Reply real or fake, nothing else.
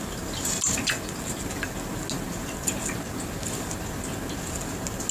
real